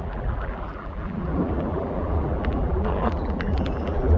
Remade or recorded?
remade